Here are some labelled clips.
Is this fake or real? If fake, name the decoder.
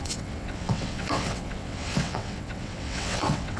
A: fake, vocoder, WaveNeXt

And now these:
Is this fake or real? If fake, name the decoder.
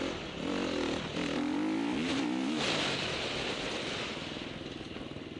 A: real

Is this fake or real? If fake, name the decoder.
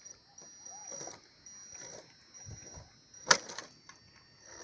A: real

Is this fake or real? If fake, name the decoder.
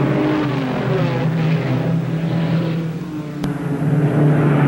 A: real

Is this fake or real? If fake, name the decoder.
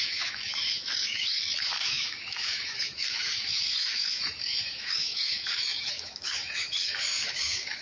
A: fake, autoencoder, DAC-VAE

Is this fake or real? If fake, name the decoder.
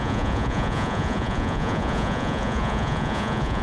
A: fake, vocoder, Vocos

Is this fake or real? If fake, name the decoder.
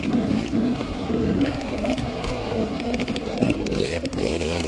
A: fake, codec, SNAC